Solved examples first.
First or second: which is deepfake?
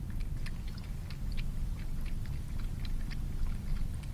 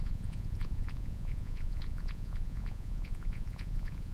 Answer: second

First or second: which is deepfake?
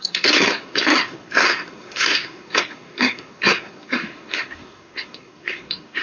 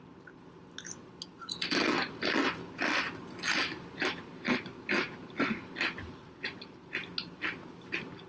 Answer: first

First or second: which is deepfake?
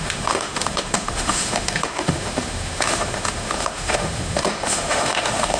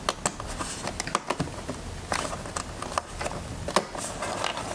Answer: first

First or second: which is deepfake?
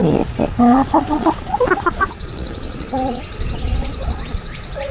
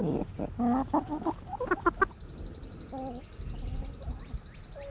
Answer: first